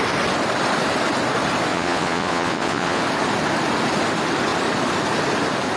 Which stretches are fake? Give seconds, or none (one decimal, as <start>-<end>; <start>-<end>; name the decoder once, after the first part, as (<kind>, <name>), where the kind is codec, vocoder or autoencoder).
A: 1.7-3.0 (vocoder, Vocos)